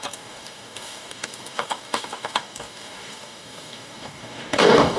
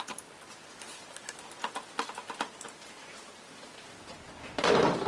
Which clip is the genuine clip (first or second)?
second